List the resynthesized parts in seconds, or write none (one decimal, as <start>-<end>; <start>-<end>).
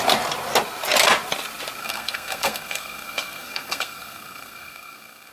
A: 1.8-5.3